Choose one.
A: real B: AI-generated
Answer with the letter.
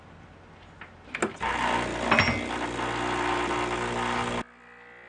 A